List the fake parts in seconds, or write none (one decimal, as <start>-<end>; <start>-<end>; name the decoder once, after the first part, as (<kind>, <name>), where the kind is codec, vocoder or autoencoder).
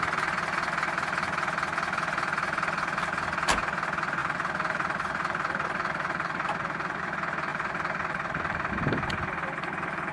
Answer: 4.2-7.0 (vocoder, BigVGAN v2); 7.5-8.7